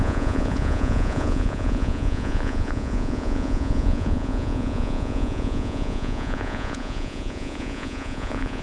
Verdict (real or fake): fake